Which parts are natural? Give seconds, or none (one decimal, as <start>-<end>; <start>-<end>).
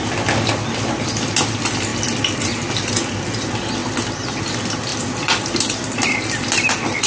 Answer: 0.0-7.1